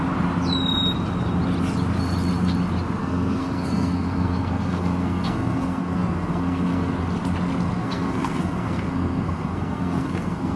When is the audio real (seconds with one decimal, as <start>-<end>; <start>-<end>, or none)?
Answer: 0.0-3.0; 6.9-7.8